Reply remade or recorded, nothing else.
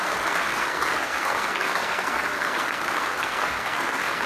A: remade